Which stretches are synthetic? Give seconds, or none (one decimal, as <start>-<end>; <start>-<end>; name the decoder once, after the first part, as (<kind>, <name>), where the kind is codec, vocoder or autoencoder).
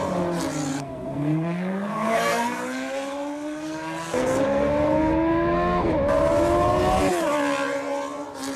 0.7-5.9 (codec, SNAC)